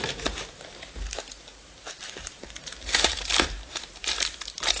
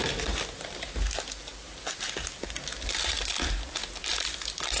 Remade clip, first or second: first